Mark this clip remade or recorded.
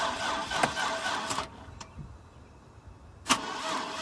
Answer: recorded